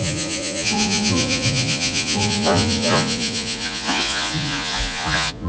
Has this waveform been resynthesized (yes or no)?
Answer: yes